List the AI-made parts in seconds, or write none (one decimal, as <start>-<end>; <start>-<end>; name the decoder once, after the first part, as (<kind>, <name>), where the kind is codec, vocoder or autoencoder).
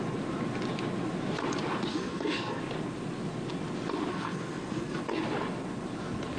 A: 1.9-2.6 (codec, SNAC); 4.1-5.0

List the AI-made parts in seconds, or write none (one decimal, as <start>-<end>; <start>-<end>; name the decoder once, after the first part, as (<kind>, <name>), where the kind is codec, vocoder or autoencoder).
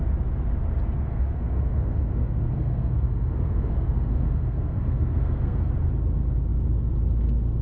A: 1.1-5.7 (codec, SNAC)